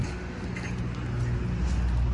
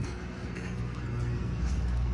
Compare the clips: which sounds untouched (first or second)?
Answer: first